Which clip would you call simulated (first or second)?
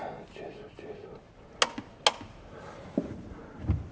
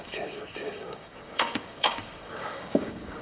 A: second